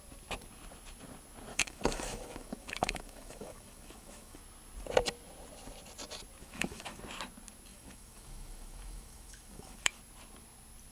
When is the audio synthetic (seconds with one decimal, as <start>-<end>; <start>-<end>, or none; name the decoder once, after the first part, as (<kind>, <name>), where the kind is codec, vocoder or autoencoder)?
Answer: 1.5-4.4 (autoencoder, DAC-VAE); 6.4-7.0; 7.7-10.0